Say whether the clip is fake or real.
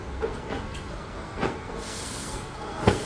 fake